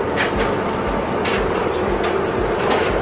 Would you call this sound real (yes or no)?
yes